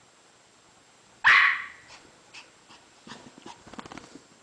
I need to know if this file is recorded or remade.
recorded